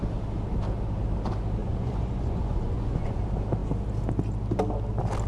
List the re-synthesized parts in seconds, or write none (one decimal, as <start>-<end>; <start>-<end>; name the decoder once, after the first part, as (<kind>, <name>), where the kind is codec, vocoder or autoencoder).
1.6-3.2 (vocoder, Vocos)